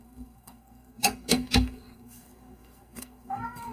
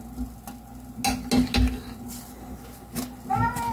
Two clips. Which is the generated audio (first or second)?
first